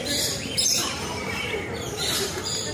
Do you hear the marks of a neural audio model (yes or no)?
yes